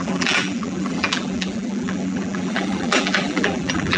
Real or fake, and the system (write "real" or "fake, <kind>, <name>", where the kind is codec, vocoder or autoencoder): fake, vocoder, BigVGAN v2